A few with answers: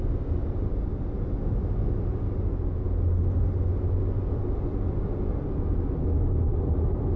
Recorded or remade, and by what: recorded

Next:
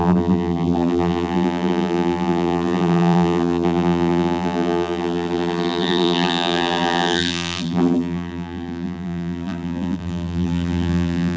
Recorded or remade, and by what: remade, vocoder, BigVGAN v2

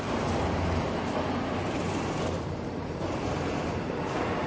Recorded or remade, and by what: remade, vocoder, BigVGAN v2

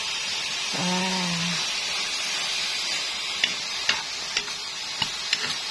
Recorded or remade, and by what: recorded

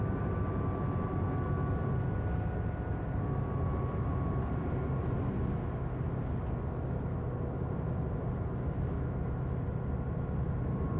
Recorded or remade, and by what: recorded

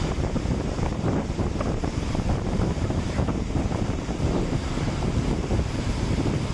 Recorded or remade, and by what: remade, vocoder, BigVGAN v2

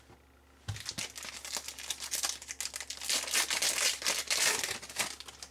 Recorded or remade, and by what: recorded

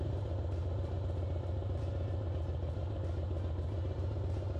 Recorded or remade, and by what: remade, vocoder, BigVGAN v2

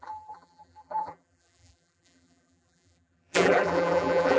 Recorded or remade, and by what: remade, vocoder, BigVGAN v2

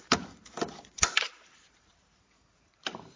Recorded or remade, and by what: remade, vocoder, BigVGAN v2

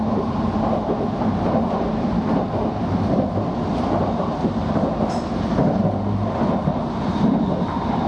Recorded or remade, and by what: recorded